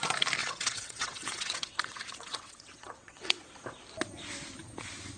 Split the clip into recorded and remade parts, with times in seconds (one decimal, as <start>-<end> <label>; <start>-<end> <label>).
0.0-0.4 recorded; 0.4-3.5 remade; 3.5-5.2 recorded